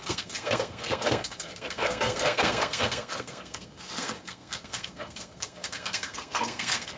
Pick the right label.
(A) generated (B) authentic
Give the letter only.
A